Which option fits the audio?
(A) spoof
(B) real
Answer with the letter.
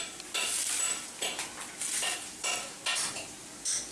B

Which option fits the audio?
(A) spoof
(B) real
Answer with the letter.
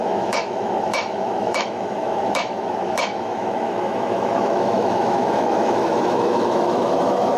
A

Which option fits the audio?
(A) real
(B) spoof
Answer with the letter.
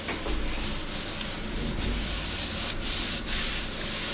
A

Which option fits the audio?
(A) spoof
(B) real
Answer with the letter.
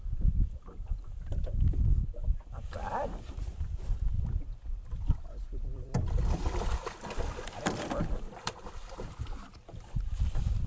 A